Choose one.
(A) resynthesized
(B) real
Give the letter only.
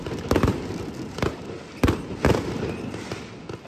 B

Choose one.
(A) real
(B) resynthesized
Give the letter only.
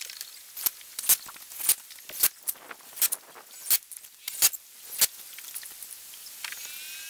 A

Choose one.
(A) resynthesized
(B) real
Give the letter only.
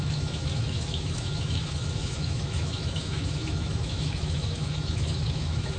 A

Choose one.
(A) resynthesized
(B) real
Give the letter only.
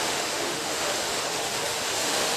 A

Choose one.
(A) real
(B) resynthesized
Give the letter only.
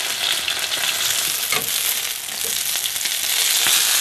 A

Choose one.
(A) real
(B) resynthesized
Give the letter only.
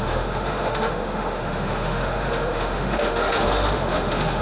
B